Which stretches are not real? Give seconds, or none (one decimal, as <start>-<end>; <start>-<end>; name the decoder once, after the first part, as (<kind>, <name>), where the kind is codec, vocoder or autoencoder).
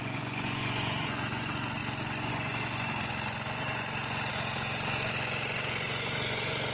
0.0-6.7 (vocoder, Vocos)